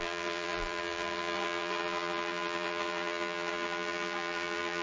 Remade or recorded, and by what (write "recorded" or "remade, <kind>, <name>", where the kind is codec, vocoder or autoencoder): remade, vocoder, BigVGAN v2